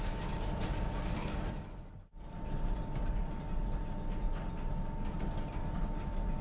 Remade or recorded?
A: recorded